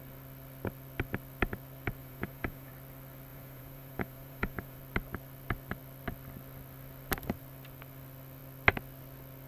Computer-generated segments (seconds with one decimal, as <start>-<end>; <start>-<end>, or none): 2.0-2.7; 3.3-4.8